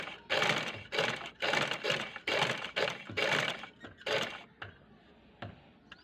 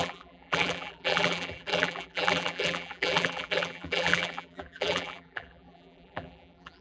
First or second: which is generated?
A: second